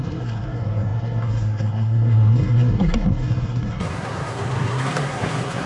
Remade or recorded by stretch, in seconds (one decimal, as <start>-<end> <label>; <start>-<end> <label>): 0.0-5.7 remade